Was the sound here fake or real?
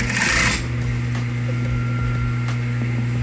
real